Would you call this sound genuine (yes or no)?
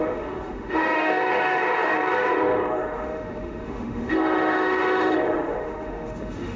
no